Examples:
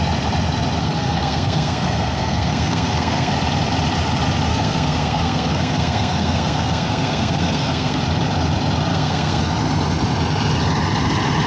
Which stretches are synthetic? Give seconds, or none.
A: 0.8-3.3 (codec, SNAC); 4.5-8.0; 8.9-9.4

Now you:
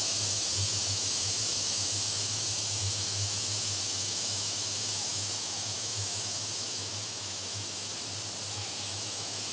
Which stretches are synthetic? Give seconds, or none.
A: 0.0-7.9 (autoencoder, DAC-VAE); 8.5-9.5

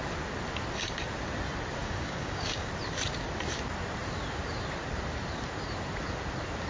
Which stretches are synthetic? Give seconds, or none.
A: 1.8-2.7 (codec, DAC)

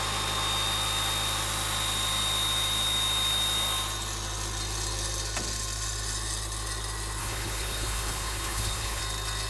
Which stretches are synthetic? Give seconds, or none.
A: 7.2-9.0 (codec, HILCodec)